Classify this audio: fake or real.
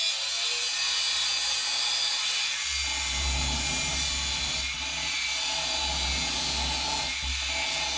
real